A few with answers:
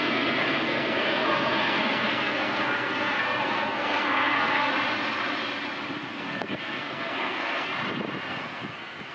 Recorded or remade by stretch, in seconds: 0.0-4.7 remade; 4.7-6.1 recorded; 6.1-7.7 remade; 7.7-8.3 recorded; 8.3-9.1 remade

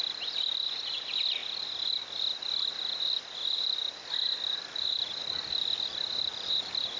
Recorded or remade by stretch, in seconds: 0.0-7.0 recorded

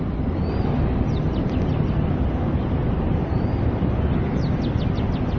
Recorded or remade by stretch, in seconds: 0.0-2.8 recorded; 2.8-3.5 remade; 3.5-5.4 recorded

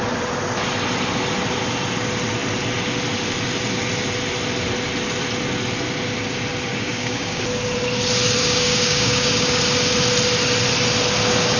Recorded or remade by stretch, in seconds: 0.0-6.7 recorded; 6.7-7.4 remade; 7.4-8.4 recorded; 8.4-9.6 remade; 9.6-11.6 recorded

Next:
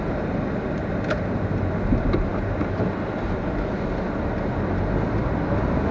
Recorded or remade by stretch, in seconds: 0.0-5.9 recorded

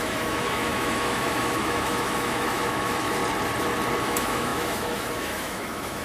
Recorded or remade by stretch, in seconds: 0.0-3.2 remade; 3.2-4.0 recorded; 4.0-6.0 remade